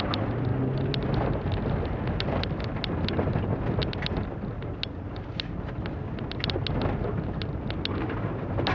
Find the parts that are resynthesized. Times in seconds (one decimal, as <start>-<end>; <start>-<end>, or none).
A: none